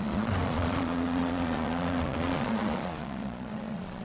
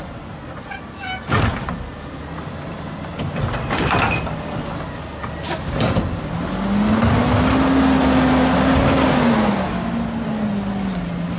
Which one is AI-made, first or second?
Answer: first